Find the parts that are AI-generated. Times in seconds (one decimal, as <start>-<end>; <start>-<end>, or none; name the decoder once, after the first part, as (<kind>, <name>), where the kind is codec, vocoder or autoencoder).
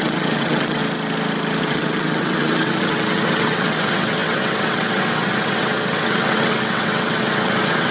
0.0-0.8 (vocoder, WaveNeXt); 1.6-7.9